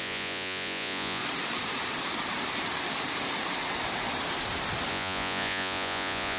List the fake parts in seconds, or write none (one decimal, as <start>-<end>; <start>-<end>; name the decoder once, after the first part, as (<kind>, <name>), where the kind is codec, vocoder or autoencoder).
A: 0.0-1.2 (vocoder, Vocos); 4.9-6.4